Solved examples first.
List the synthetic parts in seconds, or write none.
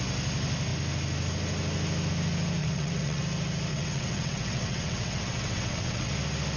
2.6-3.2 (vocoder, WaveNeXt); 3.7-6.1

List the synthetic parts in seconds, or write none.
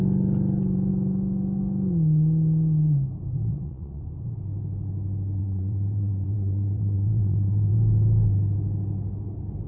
3.4-4.0 (vocoder, WaveNeXt); 5.4-7.7